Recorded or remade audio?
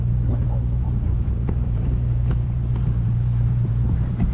remade